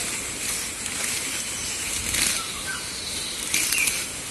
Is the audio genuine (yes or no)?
yes